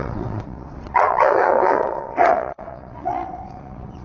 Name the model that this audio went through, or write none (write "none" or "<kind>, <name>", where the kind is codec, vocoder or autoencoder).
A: vocoder, WaveNeXt